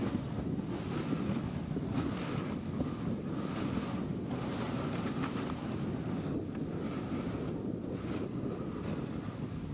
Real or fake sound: real